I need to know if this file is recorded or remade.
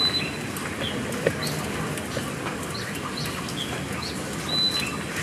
recorded